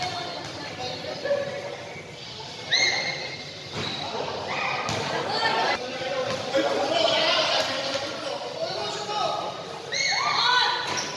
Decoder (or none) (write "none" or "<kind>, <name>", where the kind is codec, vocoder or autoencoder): none